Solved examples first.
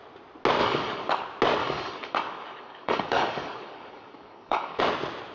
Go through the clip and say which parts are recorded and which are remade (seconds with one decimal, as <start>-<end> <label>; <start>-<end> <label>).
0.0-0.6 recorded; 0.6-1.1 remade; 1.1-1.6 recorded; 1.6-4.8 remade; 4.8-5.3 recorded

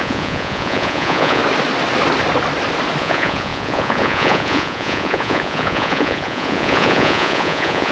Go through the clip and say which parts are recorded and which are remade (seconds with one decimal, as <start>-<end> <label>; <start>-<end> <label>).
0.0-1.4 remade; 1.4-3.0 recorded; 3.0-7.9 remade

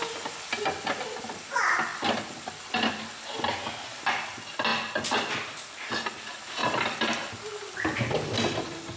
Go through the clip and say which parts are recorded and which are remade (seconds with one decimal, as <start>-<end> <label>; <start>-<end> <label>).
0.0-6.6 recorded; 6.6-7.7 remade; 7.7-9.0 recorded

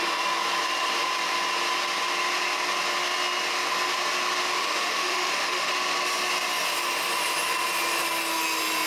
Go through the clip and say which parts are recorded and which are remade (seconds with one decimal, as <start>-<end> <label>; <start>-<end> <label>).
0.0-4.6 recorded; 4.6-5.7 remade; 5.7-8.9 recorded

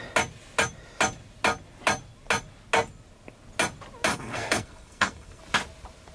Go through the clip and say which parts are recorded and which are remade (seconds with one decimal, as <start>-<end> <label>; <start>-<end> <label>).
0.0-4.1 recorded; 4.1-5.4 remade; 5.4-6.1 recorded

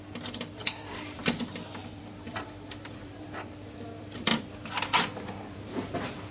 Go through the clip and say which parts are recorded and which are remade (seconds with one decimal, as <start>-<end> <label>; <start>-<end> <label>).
0.0-0.6 recorded; 0.6-1.4 remade; 1.4-1.8 recorded; 1.8-5.6 remade; 5.6-6.3 recorded

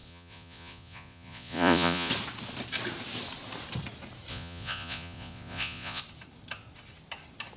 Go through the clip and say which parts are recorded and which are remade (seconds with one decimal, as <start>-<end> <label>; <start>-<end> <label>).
0.0-2.1 remade; 2.1-4.3 recorded; 4.3-6.0 remade; 6.0-7.6 recorded